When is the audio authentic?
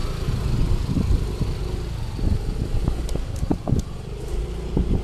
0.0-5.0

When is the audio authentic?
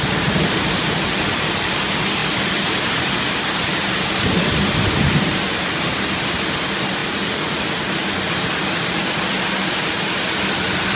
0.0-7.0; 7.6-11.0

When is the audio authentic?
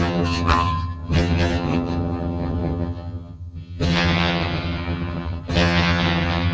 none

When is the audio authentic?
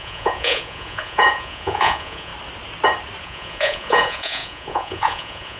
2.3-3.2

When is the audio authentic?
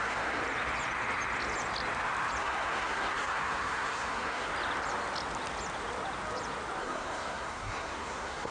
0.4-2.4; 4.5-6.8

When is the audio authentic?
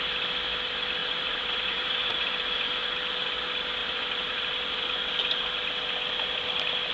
0.0-1.0; 2.3-3.8; 4.4-6.9